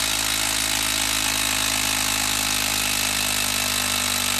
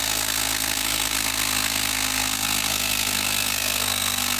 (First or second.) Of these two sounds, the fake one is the second